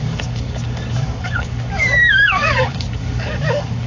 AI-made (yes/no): yes